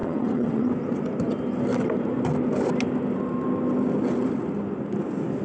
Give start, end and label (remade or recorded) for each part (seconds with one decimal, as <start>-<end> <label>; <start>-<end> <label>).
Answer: 0.0-0.7 remade; 0.7-5.4 recorded